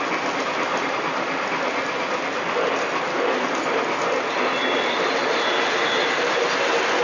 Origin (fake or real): real